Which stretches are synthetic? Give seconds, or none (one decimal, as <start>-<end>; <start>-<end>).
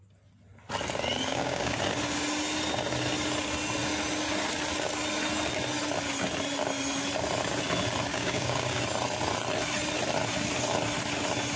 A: 1.3-1.8; 8.1-8.8